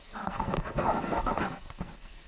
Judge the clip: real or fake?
fake